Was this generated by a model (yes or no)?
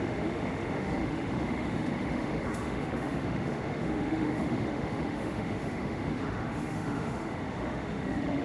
yes